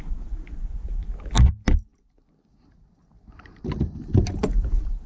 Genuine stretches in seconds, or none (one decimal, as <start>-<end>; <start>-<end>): 0.0-5.1